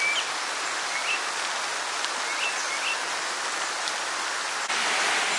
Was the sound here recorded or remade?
recorded